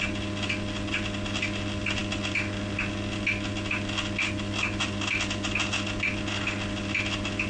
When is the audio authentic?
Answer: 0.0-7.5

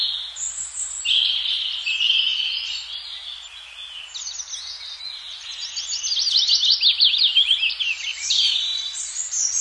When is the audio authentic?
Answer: 0.0-2.3; 3.1-8.1; 8.8-9.6

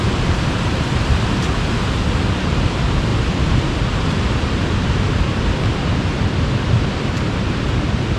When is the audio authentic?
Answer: 0.0-3.1; 7.1-8.2